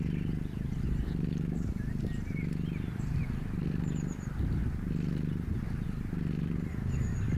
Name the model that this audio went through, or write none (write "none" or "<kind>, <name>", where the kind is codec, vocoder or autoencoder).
none